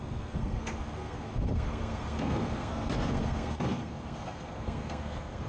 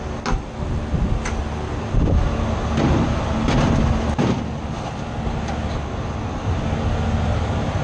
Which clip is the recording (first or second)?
second